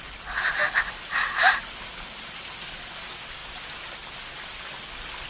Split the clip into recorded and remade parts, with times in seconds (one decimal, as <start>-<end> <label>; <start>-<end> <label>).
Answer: 0.0-5.3 recorded